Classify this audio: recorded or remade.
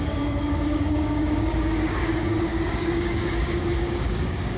remade